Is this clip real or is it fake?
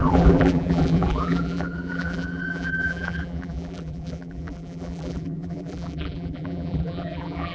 fake